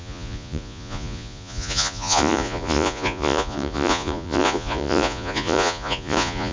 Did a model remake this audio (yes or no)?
yes